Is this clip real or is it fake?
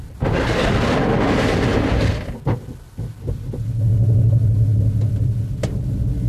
real